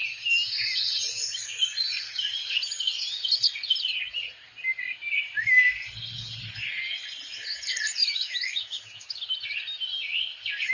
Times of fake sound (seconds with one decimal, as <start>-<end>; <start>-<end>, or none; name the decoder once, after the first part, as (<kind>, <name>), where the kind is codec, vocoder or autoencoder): 8.0-9.2 (autoencoder, DAC-VAE)